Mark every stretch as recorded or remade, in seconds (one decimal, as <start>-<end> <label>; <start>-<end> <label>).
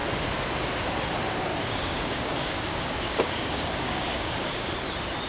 0.0-1.5 recorded; 1.5-4.7 remade; 4.7-5.3 recorded